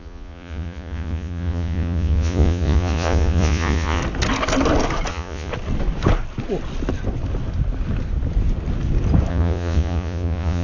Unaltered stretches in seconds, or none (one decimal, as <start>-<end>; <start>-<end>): 4.0-5.1; 5.5-9.3